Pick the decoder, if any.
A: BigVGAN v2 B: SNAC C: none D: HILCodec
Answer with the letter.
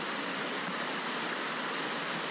C